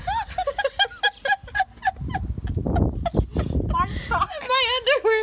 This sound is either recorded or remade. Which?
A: recorded